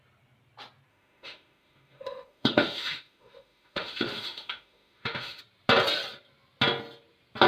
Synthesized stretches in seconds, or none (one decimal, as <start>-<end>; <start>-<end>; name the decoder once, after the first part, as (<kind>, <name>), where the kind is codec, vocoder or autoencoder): 0.9-5.4 (autoencoder, DAC-VAE)

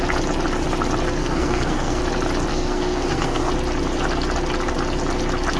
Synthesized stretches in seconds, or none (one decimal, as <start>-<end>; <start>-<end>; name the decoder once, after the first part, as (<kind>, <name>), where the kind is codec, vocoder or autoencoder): 1.2-2.0 (codec, SNAC); 2.5-3.5

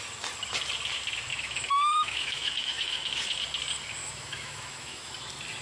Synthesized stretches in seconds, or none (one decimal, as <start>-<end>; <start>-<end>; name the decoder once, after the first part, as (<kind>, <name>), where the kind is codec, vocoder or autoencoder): 1.3-3.4 (autoencoder, DAC-VAE); 4.0-5.1

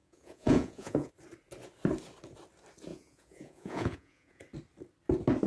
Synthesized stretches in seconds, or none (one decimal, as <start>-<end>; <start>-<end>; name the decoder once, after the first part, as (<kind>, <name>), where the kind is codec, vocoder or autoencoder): 0.0-1.1 (vocoder, Vocos); 2.9-4.4

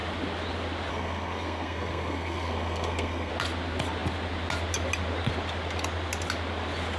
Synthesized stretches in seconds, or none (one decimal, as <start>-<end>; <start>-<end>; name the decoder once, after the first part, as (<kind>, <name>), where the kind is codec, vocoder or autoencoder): 0.9-3.3 (codec, SNAC)